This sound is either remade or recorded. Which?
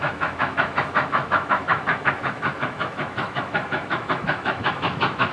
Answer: remade